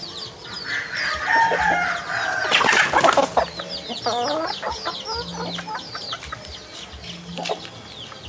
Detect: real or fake real